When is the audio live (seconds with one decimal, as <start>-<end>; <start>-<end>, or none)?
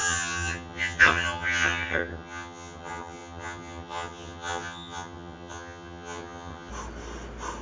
6.7-7.6